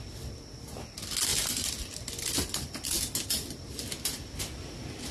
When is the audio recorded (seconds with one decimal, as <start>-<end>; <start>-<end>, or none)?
0.0-5.1